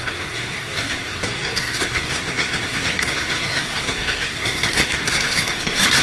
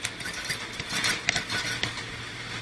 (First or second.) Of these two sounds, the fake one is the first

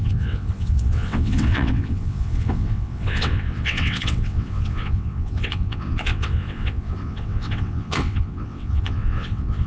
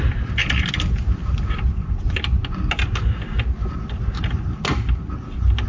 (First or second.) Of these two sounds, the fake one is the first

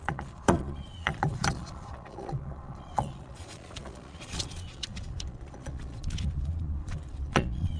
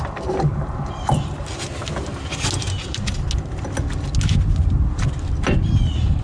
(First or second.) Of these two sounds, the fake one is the first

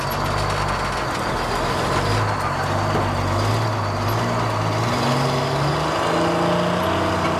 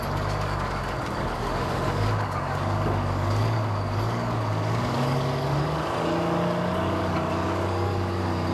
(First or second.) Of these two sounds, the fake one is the second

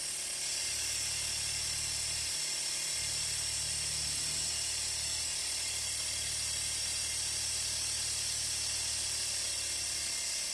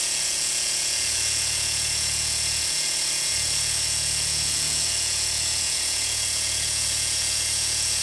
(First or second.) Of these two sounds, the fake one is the second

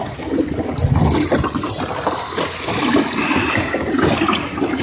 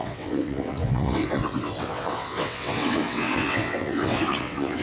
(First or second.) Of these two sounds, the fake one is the second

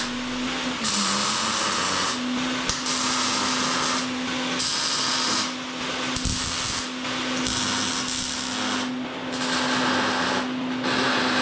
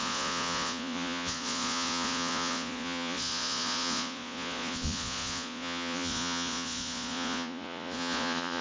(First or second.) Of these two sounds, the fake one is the second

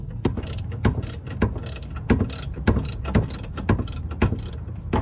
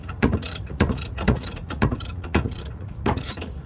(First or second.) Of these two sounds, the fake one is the second